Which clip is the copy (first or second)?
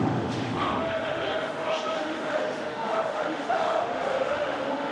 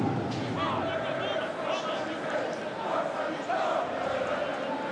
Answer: first